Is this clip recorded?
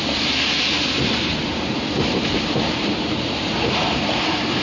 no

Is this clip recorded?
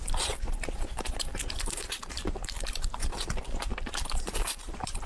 no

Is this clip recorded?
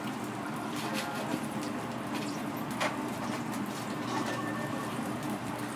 no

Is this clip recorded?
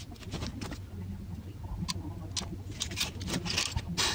yes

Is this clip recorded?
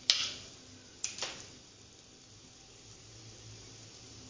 yes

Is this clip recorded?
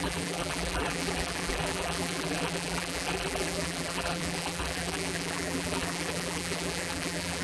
no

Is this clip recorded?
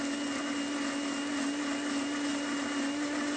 yes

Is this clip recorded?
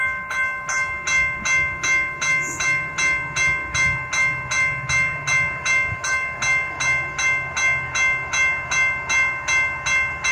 yes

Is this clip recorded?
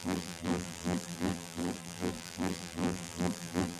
no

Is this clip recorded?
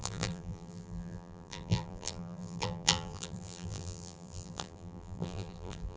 no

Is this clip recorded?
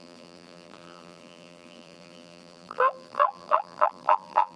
no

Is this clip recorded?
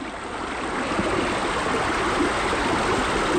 yes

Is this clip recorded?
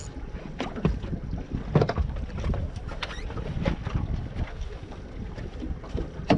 yes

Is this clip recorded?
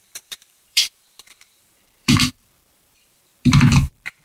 no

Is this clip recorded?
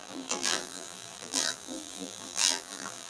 no